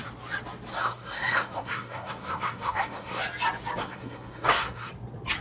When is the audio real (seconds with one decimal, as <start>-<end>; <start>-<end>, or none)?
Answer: 0.0-0.7; 3.2-3.8; 4.9-5.4